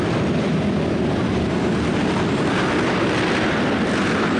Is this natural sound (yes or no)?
yes